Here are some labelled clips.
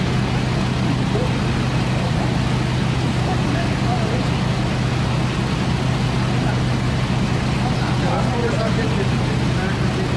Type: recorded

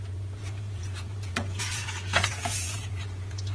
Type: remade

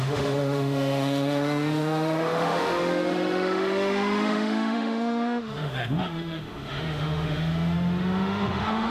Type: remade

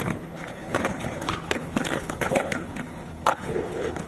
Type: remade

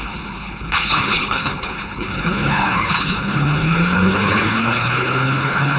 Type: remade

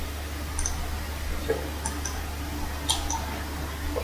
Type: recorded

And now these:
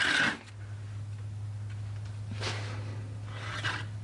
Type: recorded